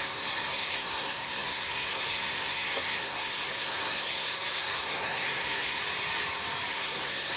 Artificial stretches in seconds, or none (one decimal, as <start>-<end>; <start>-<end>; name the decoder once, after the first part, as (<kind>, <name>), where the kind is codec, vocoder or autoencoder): 0.0-5.8 (codec, SNAC); 6.7-7.4